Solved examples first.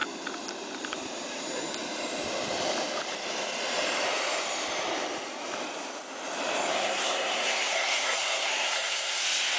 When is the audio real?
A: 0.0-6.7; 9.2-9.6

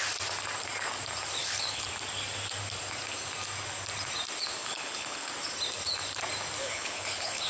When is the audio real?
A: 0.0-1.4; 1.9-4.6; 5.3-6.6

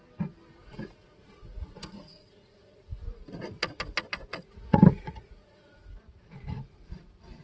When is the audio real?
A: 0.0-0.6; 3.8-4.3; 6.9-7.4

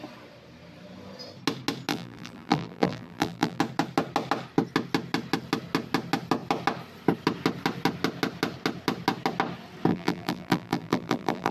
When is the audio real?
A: 0.0-1.9; 3.6-9.9

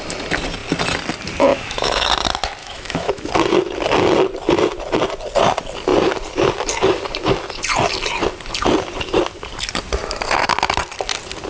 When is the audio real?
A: 0.0-1.5; 2.1-2.6; 3.3-11.5

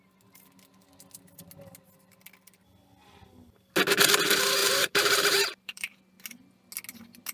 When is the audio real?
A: 0.0-4.6; 6.0-7.3

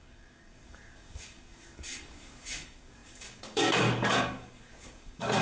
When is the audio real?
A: none